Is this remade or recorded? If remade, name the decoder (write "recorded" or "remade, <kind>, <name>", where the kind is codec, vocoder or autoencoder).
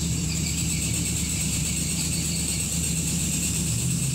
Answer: remade, vocoder, BigVGAN v2